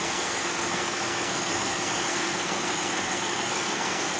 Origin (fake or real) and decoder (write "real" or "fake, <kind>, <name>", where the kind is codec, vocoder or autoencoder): fake, codec, SNAC